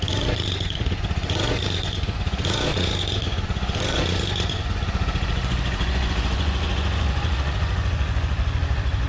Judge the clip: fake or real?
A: fake